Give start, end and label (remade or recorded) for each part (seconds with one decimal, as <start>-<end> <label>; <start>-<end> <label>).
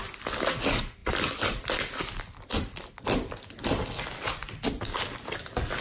0.0-1.0 recorded; 1.0-3.0 remade; 3.0-4.4 recorded; 4.4-5.1 remade; 5.1-5.8 recorded